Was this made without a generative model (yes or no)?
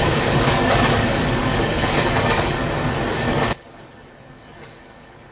no